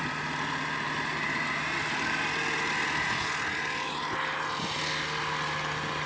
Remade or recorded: recorded